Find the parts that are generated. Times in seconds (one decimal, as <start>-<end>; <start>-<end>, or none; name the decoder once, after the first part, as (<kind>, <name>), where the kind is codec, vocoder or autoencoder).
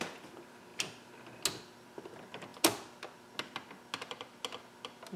none